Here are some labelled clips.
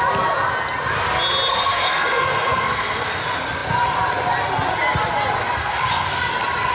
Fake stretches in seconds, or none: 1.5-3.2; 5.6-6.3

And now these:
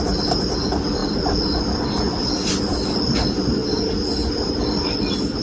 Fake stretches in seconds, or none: none

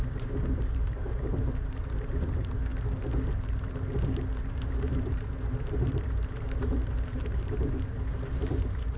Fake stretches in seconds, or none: 0.0-2.7; 4.5-9.0